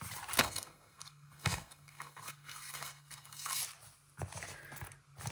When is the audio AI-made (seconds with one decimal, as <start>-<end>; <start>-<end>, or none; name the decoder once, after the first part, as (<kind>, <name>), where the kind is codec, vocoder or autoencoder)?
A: 0.4-3.6 (codec, SNAC)